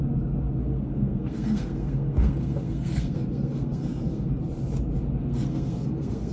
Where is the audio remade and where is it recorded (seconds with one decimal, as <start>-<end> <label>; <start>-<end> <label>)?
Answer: 0.0-0.6 recorded; 0.6-4.4 remade; 4.4-5.2 recorded; 5.2-6.3 remade